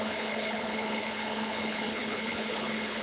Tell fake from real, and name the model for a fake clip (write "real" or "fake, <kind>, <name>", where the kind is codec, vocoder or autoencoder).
fake, codec, HILCodec